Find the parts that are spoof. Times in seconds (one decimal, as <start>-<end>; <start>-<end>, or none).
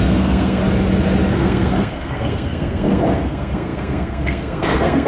0.0-0.6; 1.3-5.1